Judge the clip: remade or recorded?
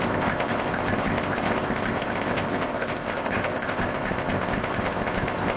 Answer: remade